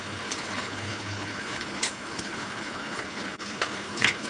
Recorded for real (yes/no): no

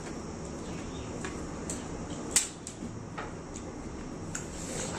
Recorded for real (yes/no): yes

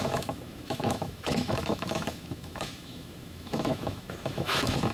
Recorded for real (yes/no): no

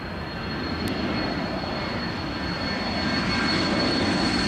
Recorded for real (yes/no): yes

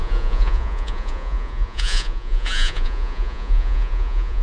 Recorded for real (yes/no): no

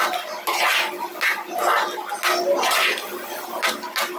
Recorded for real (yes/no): yes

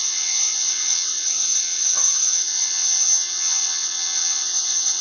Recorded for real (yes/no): no